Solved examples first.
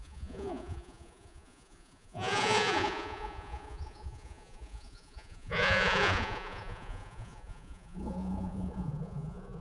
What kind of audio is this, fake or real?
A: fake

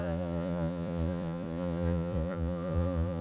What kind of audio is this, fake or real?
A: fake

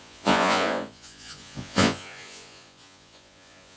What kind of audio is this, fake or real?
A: fake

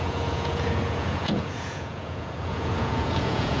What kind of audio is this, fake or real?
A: fake